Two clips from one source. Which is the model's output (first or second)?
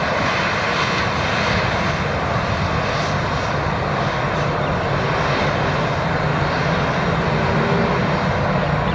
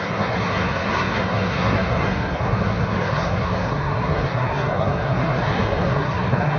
second